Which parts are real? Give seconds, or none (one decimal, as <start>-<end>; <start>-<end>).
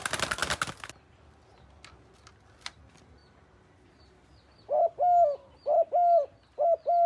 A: 0.0-7.1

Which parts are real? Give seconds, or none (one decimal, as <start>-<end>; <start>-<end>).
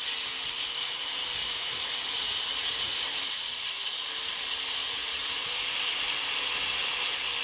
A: 0.0-1.4; 3.5-4.8; 5.5-7.4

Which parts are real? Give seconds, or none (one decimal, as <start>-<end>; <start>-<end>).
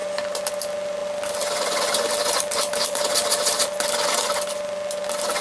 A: 0.0-5.4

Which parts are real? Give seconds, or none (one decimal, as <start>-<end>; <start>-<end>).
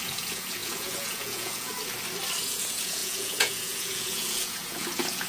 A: 1.7-2.4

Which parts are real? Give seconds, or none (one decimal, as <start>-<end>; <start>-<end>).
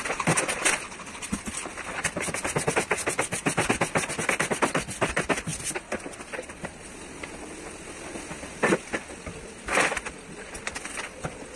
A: 0.0-11.6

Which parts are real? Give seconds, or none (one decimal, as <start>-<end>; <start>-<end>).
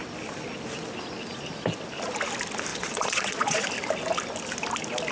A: 0.0-2.7; 3.7-5.1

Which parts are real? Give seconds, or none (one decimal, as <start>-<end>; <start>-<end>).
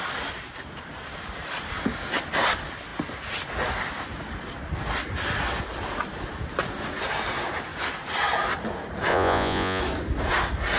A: 0.0-9.1; 9.8-10.8